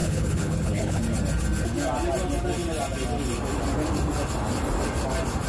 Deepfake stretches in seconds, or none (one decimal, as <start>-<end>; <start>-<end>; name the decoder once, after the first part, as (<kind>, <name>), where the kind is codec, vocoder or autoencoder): 0.0-1.0 (codec, HILCodec)